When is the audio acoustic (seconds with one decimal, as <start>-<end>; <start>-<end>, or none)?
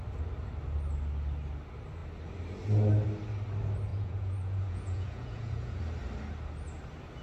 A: 0.0-3.9; 5.8-7.2